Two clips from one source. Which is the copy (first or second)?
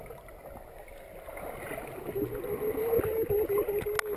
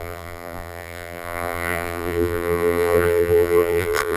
second